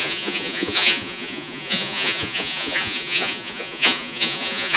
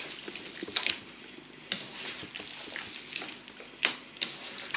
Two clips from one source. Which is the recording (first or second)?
second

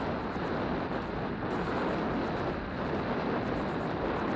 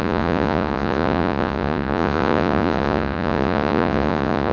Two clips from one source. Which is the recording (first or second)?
first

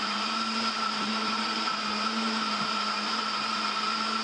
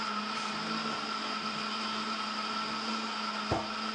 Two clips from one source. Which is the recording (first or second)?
second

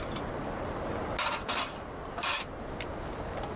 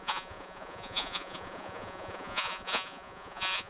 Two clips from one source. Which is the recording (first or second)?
first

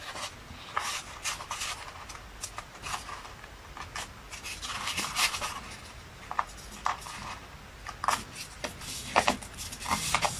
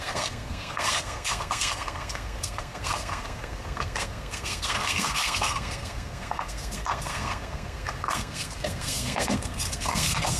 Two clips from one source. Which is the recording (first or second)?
first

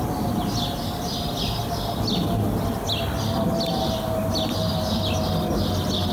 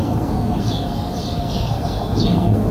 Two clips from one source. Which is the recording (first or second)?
first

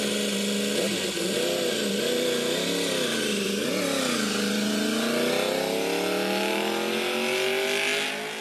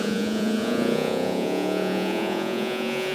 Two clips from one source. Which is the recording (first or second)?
first